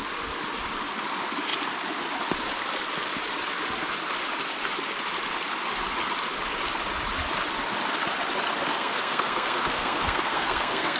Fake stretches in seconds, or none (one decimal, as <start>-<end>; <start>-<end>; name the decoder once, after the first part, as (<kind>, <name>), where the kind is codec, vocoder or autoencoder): 8.7-11.0 (codec, SNAC)